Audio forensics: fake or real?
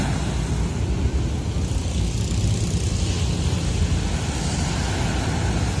real